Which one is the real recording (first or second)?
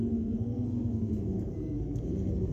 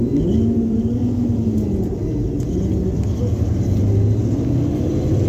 second